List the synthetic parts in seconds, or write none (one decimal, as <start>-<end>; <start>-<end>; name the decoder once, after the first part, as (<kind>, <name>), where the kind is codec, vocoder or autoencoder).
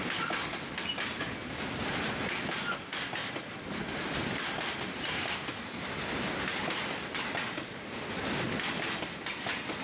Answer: 1.4-5.5 (vocoder, BigVGAN v2)